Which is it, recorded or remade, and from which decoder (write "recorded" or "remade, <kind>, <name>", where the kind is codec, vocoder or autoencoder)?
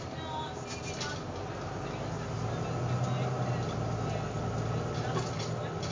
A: recorded